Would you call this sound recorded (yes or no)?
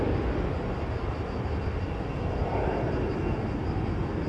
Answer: yes